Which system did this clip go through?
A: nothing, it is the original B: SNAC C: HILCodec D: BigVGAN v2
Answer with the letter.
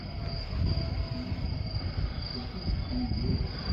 A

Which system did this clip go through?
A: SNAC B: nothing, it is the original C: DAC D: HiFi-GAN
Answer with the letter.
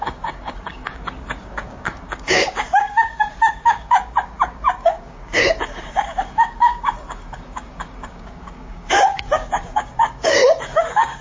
C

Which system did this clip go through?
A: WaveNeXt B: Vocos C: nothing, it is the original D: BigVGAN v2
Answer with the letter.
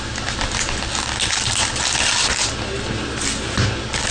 C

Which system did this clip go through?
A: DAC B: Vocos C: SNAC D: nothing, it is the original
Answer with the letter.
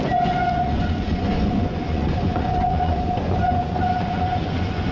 B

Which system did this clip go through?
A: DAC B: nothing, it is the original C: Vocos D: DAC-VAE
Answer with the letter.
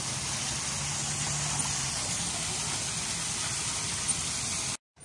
B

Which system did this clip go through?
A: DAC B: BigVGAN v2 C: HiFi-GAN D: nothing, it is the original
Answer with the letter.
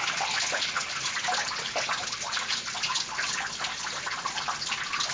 D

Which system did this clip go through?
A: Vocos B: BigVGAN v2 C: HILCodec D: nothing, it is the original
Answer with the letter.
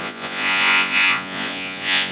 A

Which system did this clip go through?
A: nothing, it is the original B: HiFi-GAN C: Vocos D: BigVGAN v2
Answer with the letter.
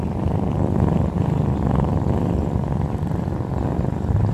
A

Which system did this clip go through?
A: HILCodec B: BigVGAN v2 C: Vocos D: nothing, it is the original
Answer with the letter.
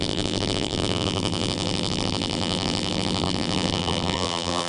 B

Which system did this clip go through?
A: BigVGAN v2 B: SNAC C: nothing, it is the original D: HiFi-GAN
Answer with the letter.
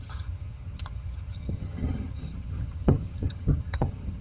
D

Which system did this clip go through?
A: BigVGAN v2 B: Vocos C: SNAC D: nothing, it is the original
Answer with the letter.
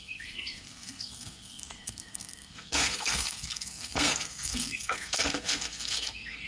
C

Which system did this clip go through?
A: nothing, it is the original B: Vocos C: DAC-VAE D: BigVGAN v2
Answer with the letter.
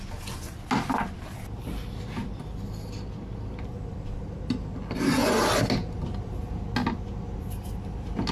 A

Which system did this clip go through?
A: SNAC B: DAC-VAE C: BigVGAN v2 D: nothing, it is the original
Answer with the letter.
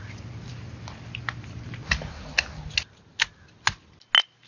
D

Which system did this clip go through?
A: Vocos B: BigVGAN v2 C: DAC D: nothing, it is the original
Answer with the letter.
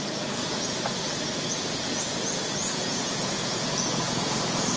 A